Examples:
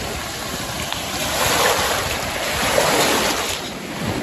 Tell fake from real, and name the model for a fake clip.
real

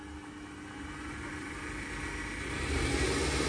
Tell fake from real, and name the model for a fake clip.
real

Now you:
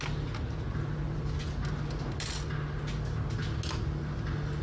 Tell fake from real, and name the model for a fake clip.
real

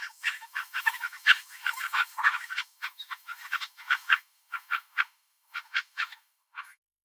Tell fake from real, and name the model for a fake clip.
fake, autoencoder, DAC-VAE